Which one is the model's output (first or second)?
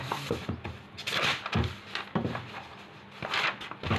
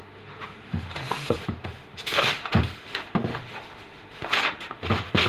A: second